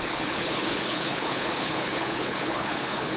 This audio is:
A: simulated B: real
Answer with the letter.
A